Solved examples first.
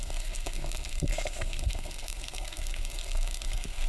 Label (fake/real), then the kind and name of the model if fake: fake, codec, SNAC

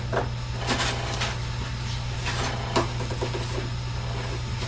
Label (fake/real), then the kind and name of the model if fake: real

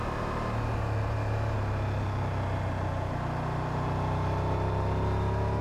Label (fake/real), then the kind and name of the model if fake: real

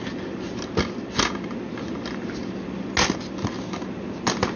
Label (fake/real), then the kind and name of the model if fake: real